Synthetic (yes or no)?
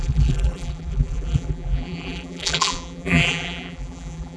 yes